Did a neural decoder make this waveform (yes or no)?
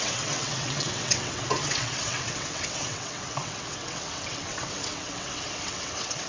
yes